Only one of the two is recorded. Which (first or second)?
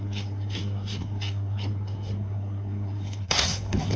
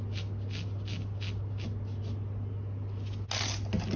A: second